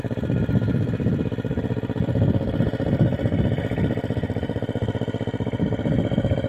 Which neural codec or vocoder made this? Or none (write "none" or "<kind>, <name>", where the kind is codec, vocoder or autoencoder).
none